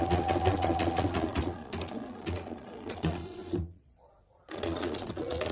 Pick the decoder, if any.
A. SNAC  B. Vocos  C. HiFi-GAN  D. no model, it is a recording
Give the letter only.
B